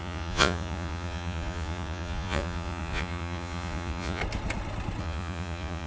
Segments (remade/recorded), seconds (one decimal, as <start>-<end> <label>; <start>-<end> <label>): 0.0-4.2 remade; 4.2-5.0 recorded; 5.0-5.9 remade